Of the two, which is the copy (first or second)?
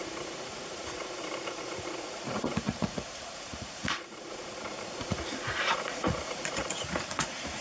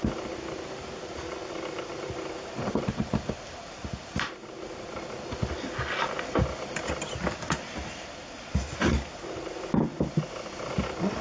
first